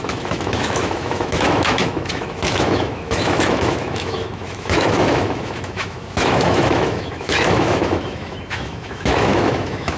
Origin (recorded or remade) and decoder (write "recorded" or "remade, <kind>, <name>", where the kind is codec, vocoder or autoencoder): remade, autoencoder, DAC-VAE